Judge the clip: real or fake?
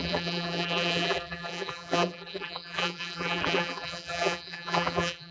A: fake